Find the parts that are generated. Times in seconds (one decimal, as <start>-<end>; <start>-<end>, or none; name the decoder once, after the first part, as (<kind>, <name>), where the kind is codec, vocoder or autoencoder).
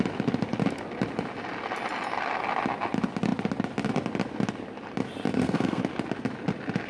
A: 5.3-5.8 (codec, SNAC)